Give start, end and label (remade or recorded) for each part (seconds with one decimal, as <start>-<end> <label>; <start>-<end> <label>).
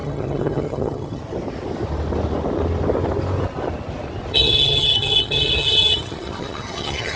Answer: 0.0-1.2 remade; 1.2-4.3 recorded; 4.3-7.2 remade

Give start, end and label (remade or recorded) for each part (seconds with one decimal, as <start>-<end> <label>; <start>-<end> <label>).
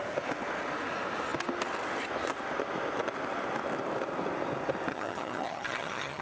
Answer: 0.0-4.9 recorded; 4.9-6.2 remade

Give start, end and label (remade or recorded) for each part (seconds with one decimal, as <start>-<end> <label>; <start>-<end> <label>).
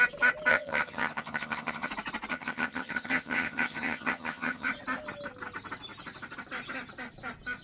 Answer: 0.0-0.5 recorded; 0.5-1.9 remade; 1.9-2.3 recorded; 2.3-4.7 remade; 4.7-7.6 recorded